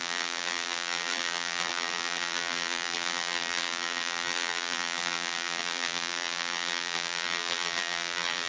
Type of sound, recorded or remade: remade